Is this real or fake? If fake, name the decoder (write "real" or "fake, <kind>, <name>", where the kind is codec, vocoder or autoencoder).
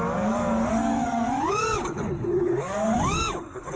fake, codec, DAC